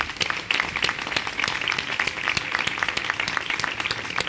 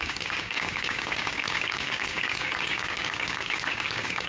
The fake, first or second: second